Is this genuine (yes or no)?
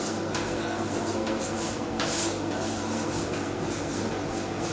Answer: no